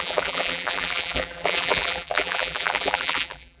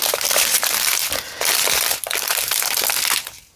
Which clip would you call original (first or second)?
second